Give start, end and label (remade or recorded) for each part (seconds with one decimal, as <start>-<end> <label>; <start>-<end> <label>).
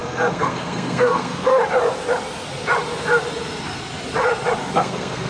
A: 0.0-1.5 remade; 1.5-4.7 recorded; 4.7-5.3 remade